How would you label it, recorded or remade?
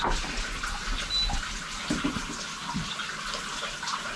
recorded